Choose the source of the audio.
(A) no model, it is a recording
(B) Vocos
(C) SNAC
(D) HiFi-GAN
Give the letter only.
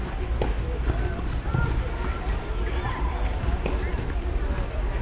A